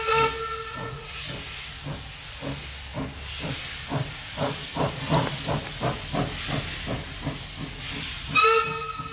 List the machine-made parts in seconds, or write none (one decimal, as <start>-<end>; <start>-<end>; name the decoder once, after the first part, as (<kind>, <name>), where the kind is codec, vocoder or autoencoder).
0.7-1.2 (vocoder, Vocos)